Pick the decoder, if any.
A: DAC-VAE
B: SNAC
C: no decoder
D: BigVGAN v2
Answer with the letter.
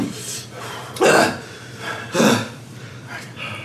D